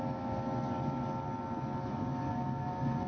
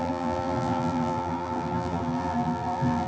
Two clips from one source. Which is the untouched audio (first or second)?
first